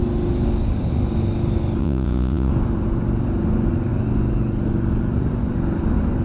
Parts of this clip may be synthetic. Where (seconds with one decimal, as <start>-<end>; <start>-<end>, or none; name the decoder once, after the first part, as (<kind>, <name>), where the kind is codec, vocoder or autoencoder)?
1.8-2.5 (vocoder, Vocos)

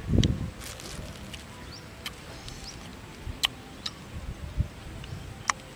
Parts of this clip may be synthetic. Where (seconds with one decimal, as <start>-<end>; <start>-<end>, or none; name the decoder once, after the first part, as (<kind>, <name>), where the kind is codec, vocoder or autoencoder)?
none

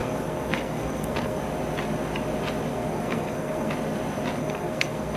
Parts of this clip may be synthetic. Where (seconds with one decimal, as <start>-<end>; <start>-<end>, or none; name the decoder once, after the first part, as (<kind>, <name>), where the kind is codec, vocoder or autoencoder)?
0.0-1.4 (codec, SNAC); 2.7-3.7; 4.4-5.2

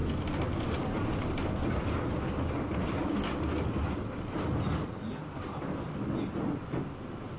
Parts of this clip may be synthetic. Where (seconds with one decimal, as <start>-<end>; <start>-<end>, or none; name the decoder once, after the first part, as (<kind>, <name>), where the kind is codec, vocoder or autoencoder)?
none